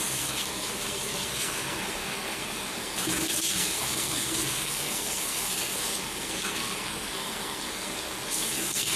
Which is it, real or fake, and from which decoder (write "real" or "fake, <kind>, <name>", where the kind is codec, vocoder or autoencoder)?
fake, codec, SNAC